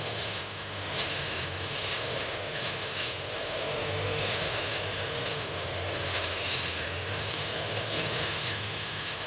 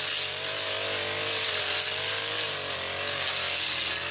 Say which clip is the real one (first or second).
second